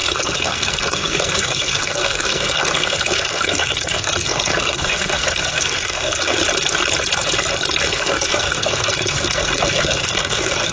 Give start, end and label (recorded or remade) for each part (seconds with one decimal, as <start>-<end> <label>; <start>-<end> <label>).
0.0-6.4 remade; 6.4-7.9 recorded; 7.9-10.7 remade